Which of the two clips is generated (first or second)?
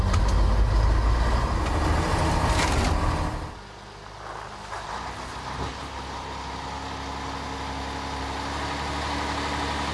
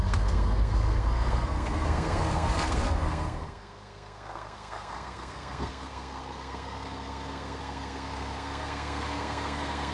second